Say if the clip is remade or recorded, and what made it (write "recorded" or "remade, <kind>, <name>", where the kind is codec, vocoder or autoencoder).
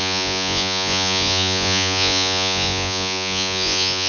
remade, vocoder, Vocos